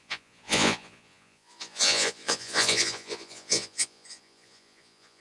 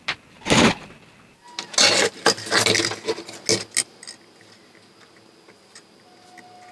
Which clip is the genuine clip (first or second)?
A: second